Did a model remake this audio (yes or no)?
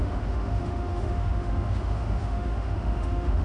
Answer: yes